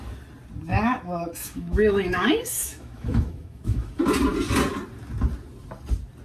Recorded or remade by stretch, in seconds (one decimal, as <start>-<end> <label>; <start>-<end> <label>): 0.0-0.7 recorded; 0.7-3.9 remade; 3.9-6.2 recorded